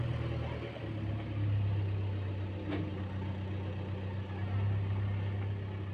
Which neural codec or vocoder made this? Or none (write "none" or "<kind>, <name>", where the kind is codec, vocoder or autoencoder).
none